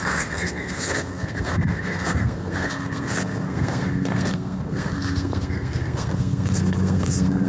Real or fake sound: fake